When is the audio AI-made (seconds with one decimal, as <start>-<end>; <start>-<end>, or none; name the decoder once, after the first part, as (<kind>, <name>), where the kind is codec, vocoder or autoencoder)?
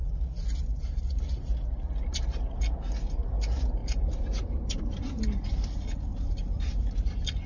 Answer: 3.8-5.2 (vocoder, BigVGAN v2); 6.1-6.9